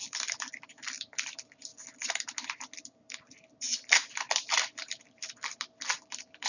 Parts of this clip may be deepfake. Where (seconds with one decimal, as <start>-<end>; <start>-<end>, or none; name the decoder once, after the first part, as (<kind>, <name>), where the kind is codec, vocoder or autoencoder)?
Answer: 0.0-1.7 (vocoder, BigVGAN v2); 3.1-6.5